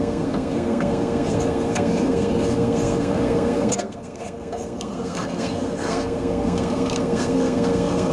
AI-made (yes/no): yes